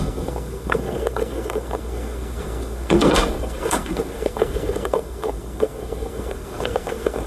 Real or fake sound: fake